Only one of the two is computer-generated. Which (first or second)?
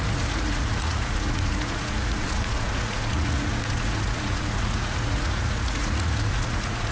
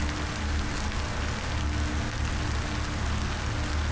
first